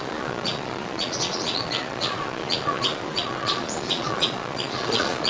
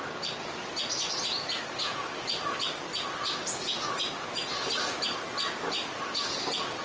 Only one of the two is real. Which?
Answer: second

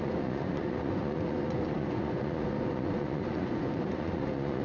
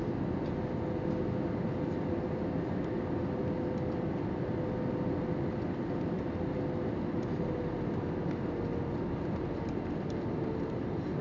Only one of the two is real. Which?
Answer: second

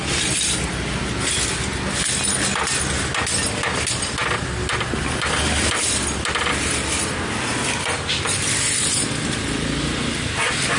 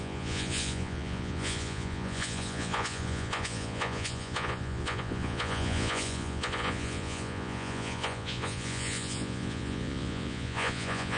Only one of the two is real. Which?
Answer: first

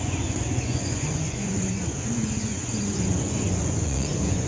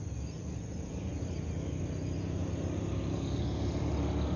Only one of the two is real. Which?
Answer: second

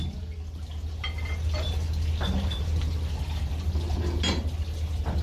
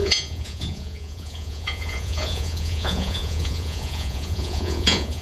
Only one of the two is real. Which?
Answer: first